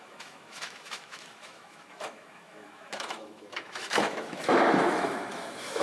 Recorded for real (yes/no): no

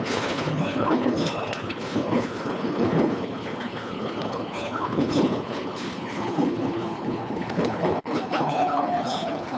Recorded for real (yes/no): no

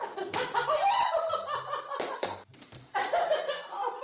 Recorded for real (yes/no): no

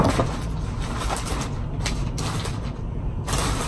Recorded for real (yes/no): yes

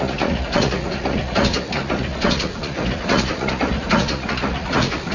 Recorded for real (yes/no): no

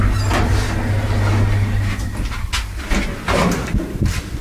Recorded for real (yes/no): yes